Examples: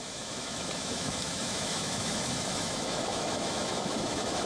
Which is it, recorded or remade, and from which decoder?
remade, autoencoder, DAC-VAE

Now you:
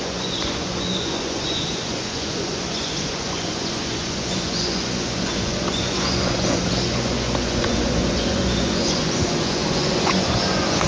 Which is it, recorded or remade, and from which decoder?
remade, vocoder, Vocos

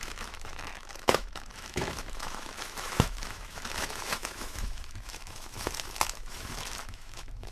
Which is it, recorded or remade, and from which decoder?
remade, autoencoder, DAC-VAE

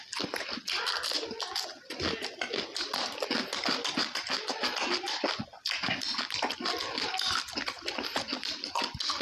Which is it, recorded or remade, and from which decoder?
recorded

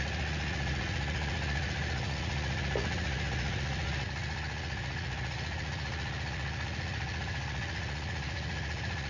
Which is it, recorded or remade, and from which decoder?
remade, vocoder, Vocos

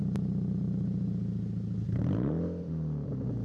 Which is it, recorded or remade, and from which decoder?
recorded